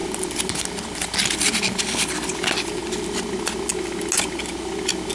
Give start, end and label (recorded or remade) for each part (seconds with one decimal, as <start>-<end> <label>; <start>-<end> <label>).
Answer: 0.0-5.1 recorded